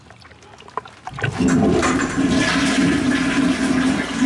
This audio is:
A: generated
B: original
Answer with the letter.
B